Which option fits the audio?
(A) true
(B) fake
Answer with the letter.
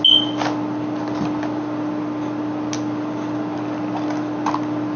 A